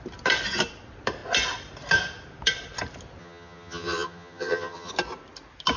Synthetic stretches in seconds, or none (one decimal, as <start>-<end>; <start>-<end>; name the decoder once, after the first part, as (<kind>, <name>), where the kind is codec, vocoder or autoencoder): 3.2-4.9 (vocoder, HiFi-GAN)